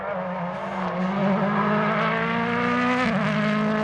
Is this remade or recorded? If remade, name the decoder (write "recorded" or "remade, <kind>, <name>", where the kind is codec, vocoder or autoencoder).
recorded